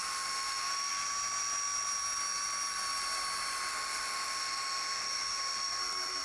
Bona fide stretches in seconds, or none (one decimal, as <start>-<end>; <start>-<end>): 0.9-3.7; 5.8-6.2